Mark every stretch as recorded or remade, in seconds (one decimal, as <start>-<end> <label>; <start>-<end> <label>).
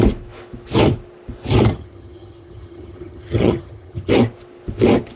0.0-1.7 recorded; 1.7-4.1 remade; 4.1-5.2 recorded